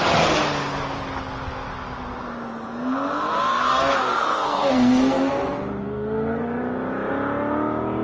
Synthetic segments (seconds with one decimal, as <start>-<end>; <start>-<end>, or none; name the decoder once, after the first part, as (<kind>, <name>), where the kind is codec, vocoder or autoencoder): 3.5-5.3 (codec, SNAC); 5.8-6.6